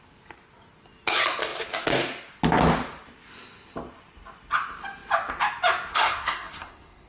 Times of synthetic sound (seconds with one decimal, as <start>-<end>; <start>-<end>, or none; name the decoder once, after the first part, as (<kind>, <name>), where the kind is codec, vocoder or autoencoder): 5.9-7.1 (codec, SNAC)